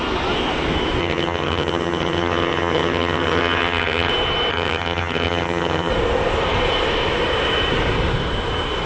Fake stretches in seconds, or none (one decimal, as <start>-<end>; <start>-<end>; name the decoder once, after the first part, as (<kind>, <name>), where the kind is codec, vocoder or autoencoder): 1.0-4.1 (vocoder, HiFi-GAN); 4.5-5.9